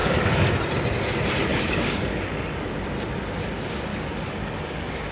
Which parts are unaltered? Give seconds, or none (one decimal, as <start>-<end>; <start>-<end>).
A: 0.5-1.5; 2.7-3.9